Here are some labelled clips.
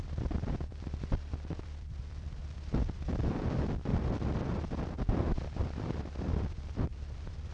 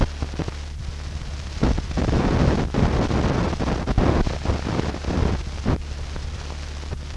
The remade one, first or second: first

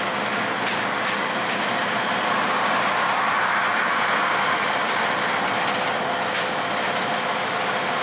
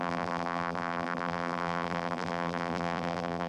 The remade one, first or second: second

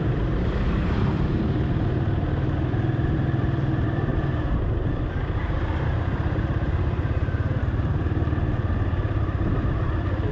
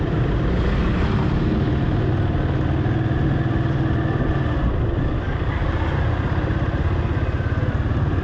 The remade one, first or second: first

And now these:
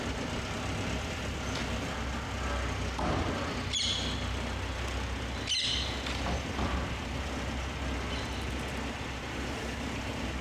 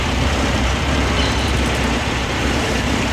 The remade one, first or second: second